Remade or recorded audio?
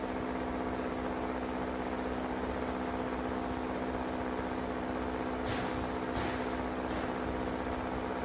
recorded